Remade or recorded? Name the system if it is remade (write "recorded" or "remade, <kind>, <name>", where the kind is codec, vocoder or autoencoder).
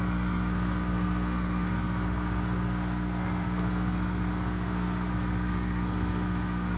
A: remade, codec, SNAC